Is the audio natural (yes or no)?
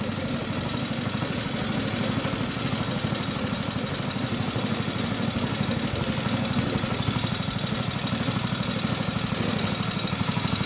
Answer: yes